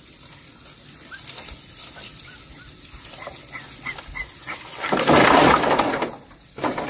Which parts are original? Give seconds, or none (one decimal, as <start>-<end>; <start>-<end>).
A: 0.0-6.9

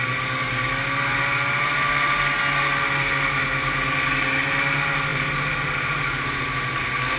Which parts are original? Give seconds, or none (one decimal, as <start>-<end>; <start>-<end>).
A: 0.0-5.1; 6.0-7.2